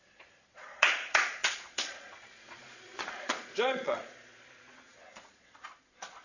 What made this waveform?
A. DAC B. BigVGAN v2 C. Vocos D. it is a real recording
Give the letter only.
C